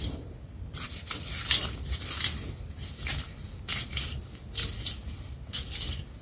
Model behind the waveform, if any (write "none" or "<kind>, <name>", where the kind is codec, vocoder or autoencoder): none